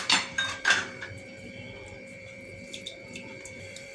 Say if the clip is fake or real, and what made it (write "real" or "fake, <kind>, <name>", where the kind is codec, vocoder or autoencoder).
fake, vocoder, BigVGAN v2